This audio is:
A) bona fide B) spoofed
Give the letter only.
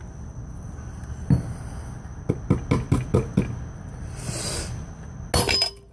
A